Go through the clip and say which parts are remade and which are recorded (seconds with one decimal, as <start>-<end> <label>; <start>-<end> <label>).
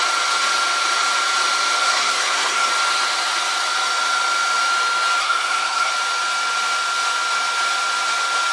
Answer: 0.0-1.8 recorded; 1.8-2.7 remade; 2.7-5.2 recorded; 5.2-5.9 remade; 5.9-8.5 recorded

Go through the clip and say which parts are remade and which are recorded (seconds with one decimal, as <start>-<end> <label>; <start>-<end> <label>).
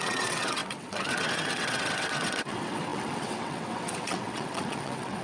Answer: 0.0-5.2 remade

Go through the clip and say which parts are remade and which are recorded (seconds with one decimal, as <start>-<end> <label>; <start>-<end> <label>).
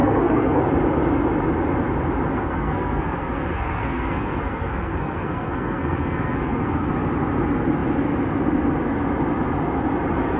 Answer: 0.0-0.6 remade; 0.6-2.3 recorded; 2.3-6.9 remade; 6.9-10.4 recorded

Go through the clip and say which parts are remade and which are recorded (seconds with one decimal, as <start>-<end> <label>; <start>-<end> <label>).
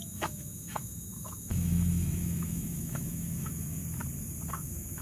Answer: 0.0-3.8 remade; 3.8-4.5 recorded; 4.5-5.0 remade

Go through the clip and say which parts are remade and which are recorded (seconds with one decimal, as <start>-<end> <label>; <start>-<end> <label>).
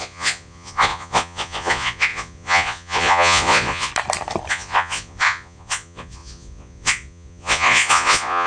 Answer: 0.0-3.9 remade; 3.9-4.5 recorded; 4.5-8.5 remade